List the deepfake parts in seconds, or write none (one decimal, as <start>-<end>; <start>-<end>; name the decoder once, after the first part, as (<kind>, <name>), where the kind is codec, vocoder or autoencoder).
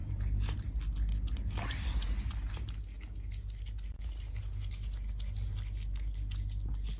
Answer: none